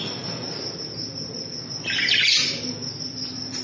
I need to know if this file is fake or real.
real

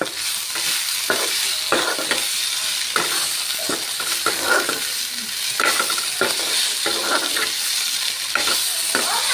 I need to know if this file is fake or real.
fake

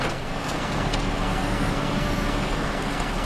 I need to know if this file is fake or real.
fake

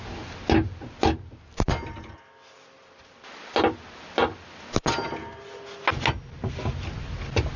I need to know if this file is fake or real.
real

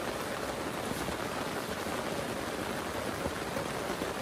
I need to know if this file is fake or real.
real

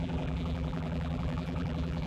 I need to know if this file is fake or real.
fake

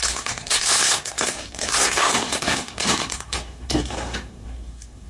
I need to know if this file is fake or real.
fake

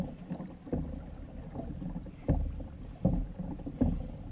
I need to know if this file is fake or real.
real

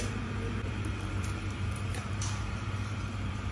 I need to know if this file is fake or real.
fake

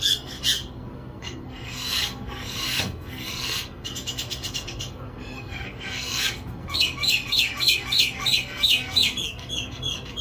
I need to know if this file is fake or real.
fake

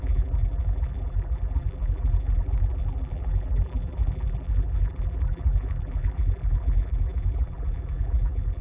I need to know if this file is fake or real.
fake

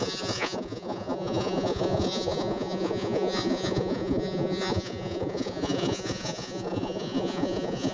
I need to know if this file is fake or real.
fake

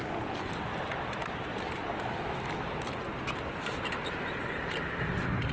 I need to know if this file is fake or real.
real